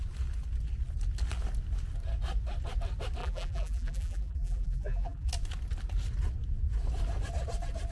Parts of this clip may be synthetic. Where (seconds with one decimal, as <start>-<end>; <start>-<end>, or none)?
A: 3.2-5.3